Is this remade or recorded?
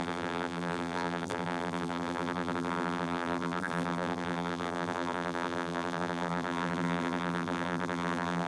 remade